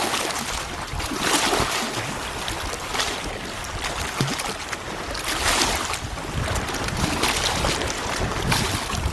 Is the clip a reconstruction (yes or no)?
no